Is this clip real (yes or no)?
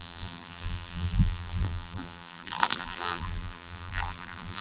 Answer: no